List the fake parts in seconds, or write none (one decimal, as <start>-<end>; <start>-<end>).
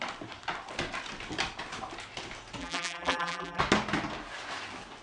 2.6-3.6